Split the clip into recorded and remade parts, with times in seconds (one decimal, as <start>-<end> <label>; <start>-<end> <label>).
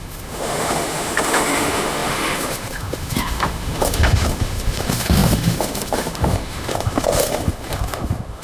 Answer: 0.0-8.4 remade